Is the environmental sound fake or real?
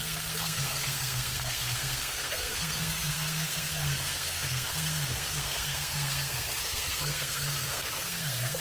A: fake